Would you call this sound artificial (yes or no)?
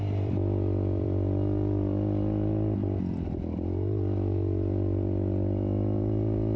yes